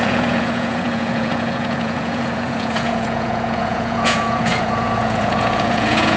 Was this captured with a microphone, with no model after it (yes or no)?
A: no